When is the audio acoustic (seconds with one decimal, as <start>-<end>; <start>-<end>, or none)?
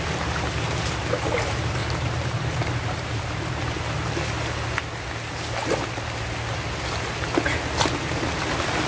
0.0-1.8; 3.8-8.9